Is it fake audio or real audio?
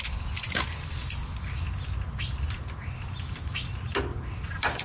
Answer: real